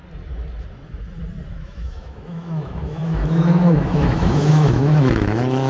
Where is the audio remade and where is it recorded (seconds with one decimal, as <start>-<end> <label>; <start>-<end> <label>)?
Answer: 0.0-1.5 recorded; 1.5-5.7 remade